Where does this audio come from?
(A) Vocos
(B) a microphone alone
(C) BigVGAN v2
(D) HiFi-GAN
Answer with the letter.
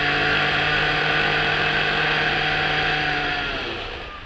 B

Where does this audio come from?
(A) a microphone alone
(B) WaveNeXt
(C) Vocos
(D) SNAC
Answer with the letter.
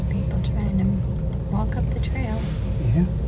A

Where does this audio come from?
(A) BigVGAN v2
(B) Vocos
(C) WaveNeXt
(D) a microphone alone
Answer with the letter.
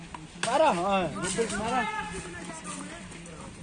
D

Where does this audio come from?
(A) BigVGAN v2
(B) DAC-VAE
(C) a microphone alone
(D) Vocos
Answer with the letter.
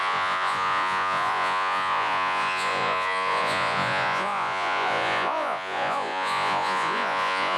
D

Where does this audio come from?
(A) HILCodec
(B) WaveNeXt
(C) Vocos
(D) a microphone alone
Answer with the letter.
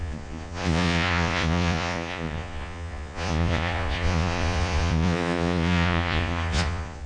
C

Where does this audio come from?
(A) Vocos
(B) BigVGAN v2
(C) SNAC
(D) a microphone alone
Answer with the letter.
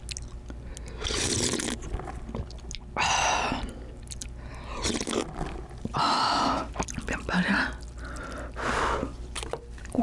D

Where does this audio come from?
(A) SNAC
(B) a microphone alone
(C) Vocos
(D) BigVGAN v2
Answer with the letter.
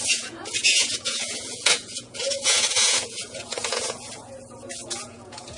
C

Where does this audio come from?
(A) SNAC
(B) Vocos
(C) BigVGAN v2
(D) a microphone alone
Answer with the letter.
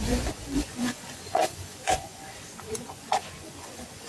B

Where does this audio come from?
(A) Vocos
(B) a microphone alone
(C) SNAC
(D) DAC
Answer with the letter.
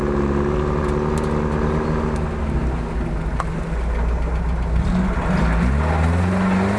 B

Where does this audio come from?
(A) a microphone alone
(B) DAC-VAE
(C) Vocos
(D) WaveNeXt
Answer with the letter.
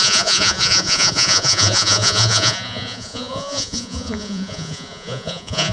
C